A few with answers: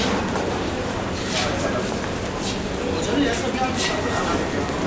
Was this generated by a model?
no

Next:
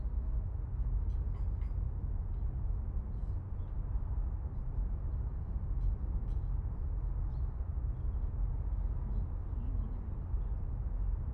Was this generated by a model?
no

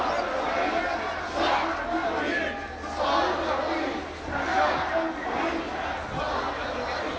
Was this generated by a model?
no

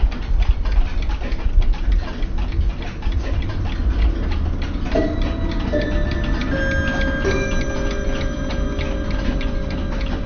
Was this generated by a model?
no